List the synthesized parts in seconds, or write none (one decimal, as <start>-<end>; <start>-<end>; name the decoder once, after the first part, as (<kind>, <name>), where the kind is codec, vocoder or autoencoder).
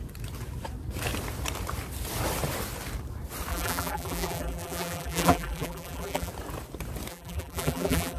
3.5-6.3 (vocoder, BigVGAN v2); 7.1-8.2